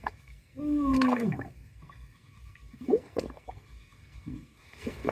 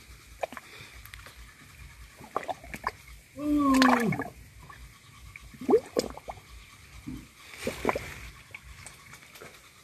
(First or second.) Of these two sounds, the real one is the second